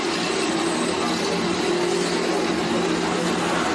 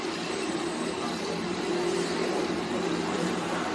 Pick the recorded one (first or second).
first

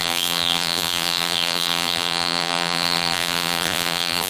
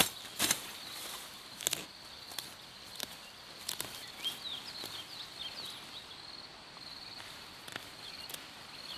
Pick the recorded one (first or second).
second